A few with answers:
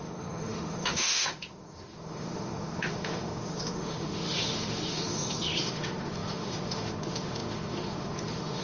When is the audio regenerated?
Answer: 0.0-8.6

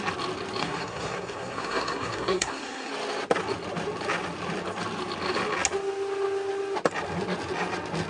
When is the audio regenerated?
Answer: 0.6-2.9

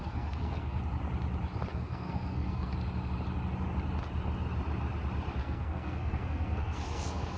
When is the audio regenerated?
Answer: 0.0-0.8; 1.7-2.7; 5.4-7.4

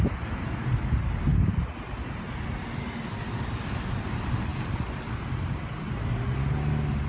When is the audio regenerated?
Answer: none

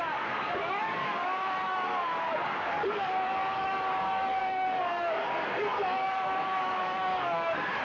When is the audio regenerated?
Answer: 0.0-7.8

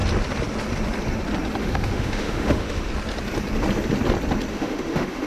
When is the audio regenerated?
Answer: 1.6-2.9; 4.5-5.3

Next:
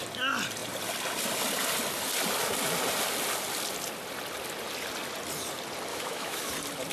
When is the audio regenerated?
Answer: 5.9-6.5

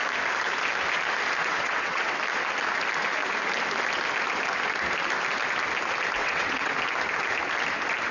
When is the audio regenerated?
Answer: 1.4-2.2; 6.2-6.7